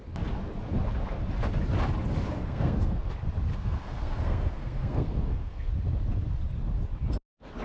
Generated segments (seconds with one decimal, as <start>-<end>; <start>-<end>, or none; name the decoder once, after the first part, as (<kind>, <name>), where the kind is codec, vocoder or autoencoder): 2.4-3.1 (codec, SNAC); 3.5-5.7